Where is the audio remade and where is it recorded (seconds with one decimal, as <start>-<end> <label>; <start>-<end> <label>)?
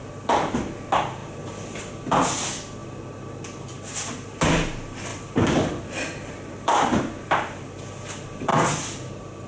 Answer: 0.0-1.2 recorded; 1.2-1.8 remade; 1.8-5.1 recorded; 5.1-7.8 remade; 7.8-9.5 recorded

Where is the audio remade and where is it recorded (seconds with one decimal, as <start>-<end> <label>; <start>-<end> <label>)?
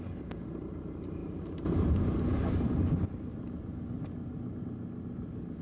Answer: 0.0-5.6 recorded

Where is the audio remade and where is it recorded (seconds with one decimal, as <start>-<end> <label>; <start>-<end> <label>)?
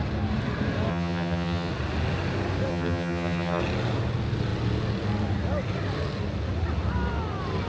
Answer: 0.0-0.9 recorded; 0.9-1.7 remade; 1.7-2.7 recorded; 2.7-3.6 remade; 3.6-7.7 recorded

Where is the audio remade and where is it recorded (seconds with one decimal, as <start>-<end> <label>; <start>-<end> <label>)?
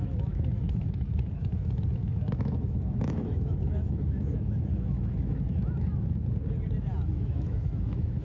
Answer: 0.0-6.2 remade; 6.2-7.0 recorded; 7.0-8.2 remade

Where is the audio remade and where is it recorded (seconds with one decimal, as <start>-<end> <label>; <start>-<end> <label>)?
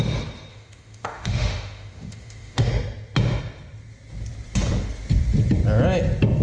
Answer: 0.0-0.5 recorded; 0.5-2.7 remade; 2.7-6.4 recorded